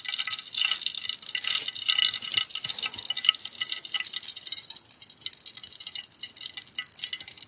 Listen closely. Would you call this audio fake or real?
real